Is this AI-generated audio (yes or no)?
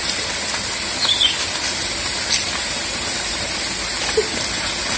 no